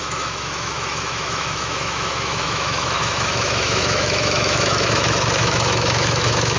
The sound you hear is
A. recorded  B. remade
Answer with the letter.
B